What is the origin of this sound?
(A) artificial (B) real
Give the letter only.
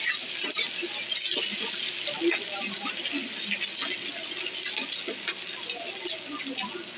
B